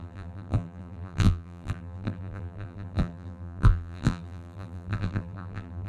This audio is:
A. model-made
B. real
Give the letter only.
A